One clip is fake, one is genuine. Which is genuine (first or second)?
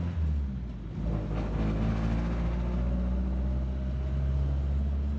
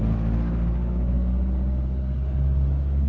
first